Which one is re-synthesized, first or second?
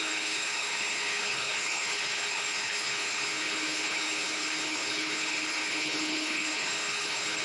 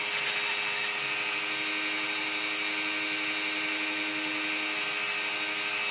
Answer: first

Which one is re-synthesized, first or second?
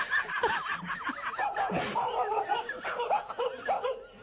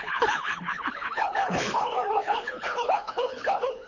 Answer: second